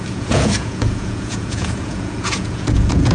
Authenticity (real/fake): fake